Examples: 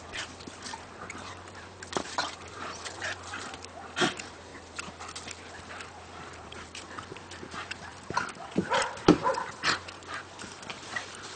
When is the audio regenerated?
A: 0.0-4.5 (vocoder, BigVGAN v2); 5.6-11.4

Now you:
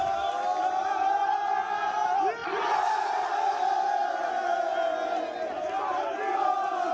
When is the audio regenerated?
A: none

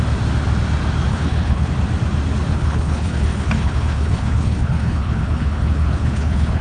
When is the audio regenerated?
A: 1.1-1.7 (codec, HILCodec); 2.5-6.6

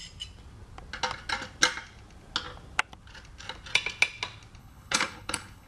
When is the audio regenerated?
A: 4.6-5.7 (codec, HILCodec)